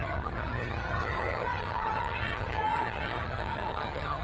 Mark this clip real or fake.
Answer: fake